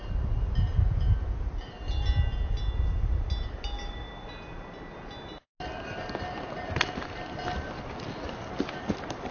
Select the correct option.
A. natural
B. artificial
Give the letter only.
A